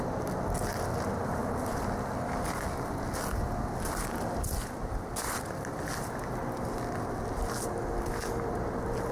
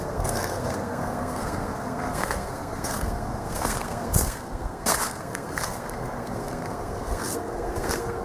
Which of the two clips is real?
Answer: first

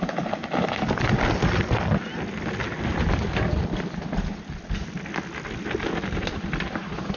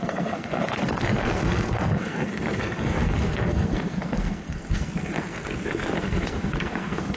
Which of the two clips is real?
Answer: first